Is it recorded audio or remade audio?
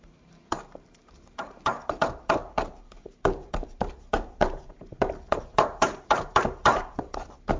remade